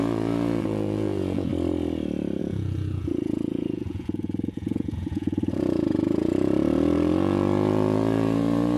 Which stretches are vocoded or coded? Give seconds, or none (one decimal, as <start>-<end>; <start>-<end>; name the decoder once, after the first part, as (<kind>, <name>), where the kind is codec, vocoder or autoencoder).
0.0-1.5 (vocoder, Vocos); 2.4-8.8